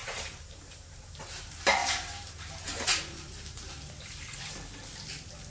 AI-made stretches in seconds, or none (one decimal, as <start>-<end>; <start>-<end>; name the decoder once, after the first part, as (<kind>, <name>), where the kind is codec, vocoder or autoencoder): 0.0-1.2 (vocoder, BigVGAN v2); 1.8-3.9